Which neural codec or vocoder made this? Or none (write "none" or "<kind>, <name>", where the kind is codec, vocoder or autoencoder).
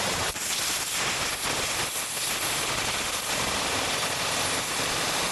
none